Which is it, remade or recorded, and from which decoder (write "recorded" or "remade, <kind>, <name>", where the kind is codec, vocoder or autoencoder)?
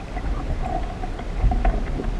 recorded